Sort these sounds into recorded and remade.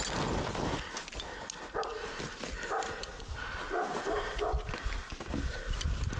recorded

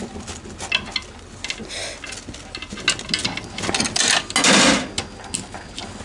recorded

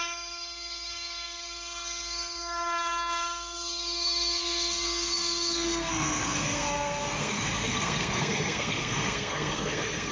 remade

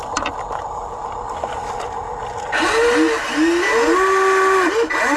recorded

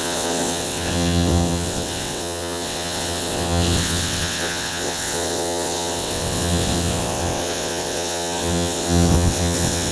remade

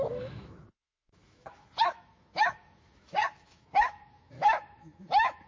remade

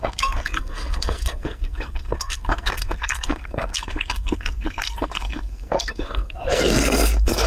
remade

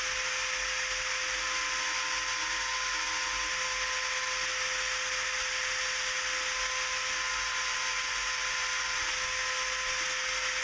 recorded